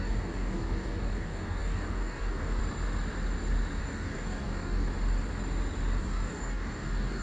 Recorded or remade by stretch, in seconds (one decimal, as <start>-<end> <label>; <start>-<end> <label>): 0.0-2.6 remade; 2.6-3.8 recorded; 3.8-4.9 remade; 4.9-6.0 recorded; 6.0-7.2 remade